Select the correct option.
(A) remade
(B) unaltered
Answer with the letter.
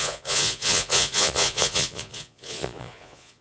A